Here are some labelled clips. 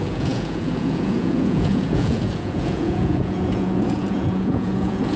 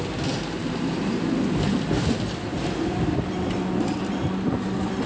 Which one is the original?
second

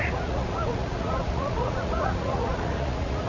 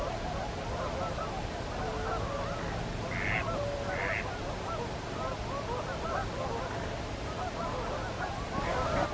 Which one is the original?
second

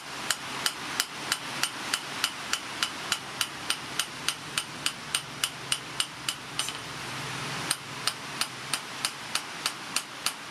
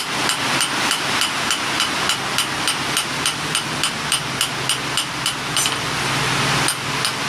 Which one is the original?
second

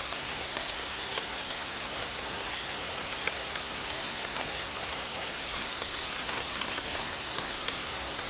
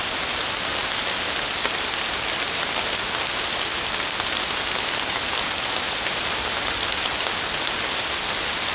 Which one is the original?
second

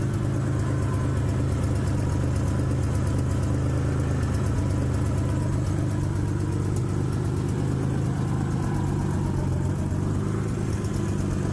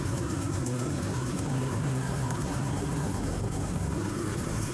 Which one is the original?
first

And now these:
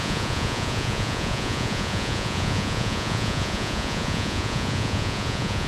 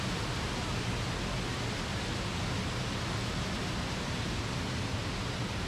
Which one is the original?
second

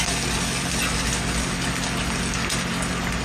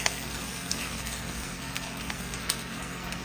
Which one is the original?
first